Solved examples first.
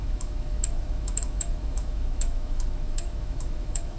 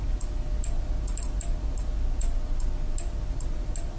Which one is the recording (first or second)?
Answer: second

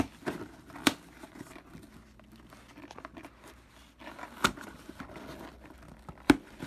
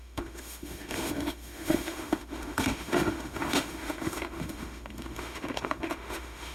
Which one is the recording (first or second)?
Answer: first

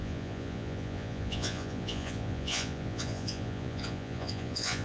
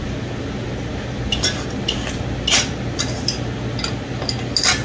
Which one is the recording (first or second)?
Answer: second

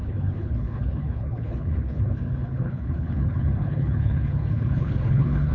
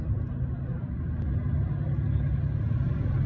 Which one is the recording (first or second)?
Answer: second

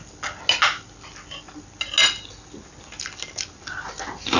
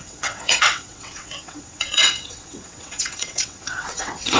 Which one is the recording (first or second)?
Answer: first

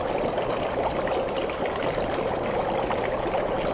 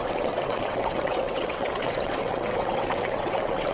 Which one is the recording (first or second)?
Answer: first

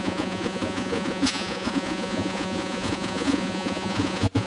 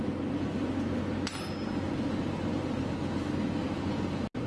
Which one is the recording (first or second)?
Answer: second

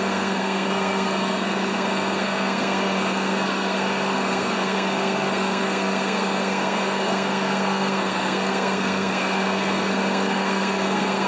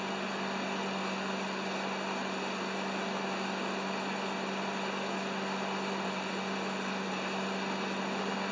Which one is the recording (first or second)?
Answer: second